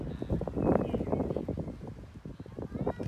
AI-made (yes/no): no